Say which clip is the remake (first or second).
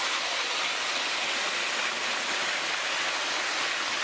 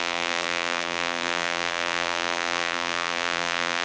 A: second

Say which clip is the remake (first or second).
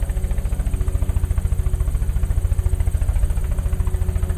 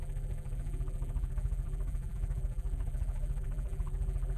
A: second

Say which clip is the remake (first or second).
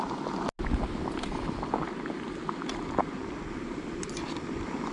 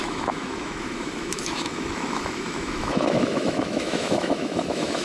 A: second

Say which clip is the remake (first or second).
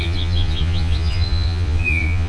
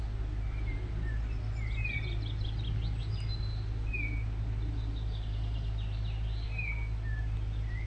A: first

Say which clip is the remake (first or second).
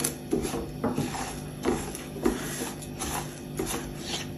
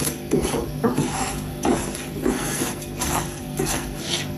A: second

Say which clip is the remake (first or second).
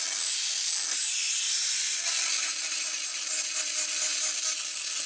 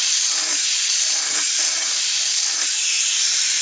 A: second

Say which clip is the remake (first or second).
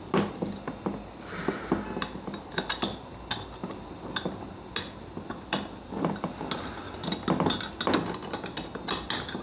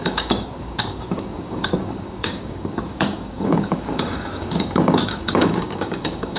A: second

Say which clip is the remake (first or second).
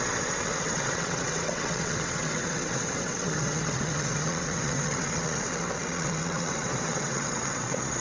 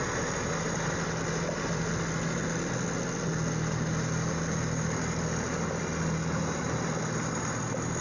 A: first